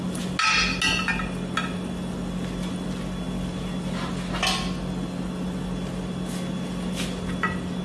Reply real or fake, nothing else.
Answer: real